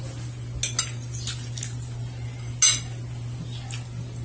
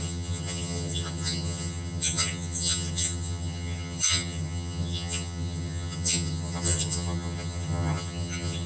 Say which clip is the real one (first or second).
first